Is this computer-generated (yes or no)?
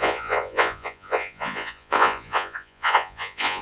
yes